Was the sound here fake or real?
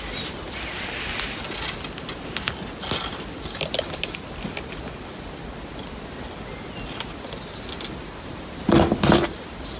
real